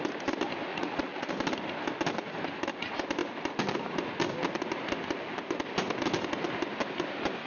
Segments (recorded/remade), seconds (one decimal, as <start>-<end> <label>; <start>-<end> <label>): 0.0-0.7 recorded; 0.7-1.3 remade; 1.3-7.5 recorded